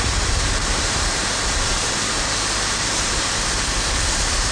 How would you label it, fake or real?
fake